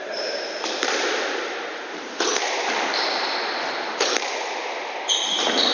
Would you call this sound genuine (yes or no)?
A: no